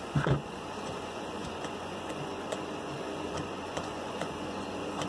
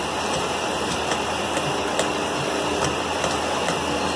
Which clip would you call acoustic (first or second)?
second